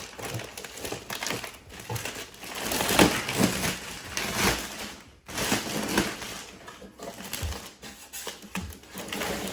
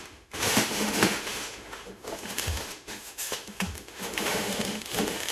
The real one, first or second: first